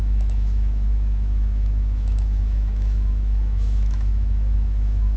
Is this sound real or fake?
fake